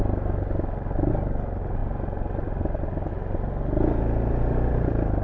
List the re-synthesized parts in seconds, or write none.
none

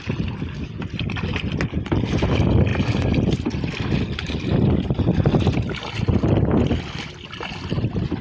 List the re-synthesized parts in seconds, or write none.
none

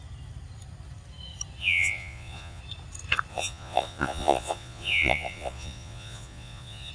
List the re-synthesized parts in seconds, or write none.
1.6-2.6 (vocoder, Vocos); 3.3-6.9

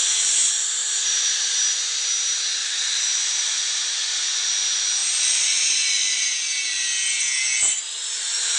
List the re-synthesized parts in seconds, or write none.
2.6-3.8 (vocoder, BigVGAN v2)

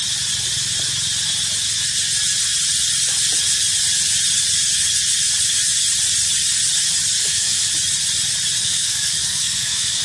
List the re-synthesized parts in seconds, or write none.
7.2-7.7 (codec, SNAC); 8.6-10.0

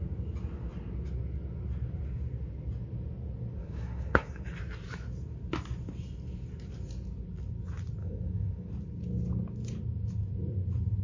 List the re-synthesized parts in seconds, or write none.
3.6-4.6 (codec, DAC); 8.0-8.7

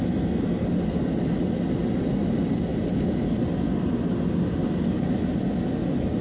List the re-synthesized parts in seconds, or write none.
none